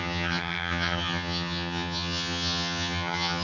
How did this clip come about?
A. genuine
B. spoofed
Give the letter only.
B